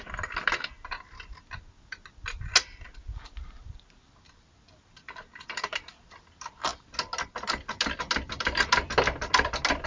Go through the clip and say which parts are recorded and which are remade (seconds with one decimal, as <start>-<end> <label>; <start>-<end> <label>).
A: 0.0-9.9 recorded